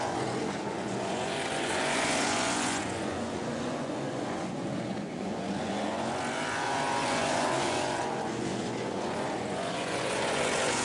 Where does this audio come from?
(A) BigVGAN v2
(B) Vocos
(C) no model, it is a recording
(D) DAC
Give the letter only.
B